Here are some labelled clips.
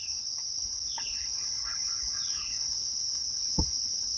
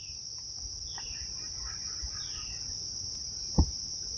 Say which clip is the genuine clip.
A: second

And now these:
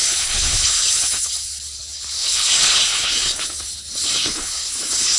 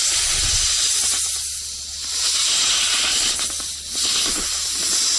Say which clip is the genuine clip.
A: second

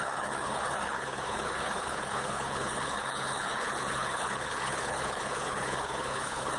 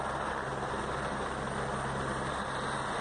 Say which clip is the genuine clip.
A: second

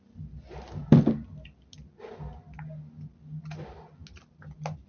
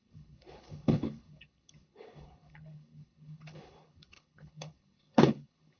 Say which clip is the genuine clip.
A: first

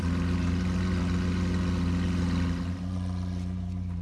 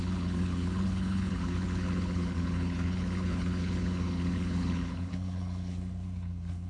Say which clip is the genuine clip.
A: first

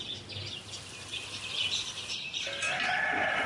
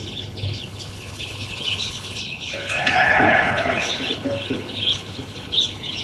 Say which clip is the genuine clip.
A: first